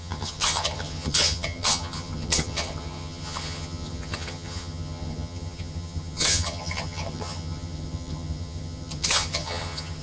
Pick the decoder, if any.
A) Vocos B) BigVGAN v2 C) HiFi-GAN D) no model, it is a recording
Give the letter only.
C